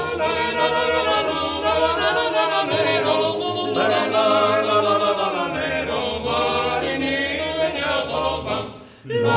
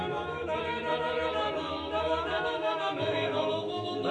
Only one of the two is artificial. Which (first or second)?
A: second